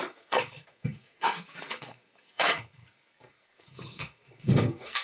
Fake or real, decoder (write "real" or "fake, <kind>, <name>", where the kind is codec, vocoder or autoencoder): fake, codec, SNAC